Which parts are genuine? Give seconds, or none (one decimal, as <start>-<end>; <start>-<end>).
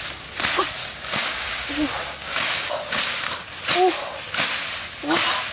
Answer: 0.0-0.8; 1.7-2.2; 3.1-5.5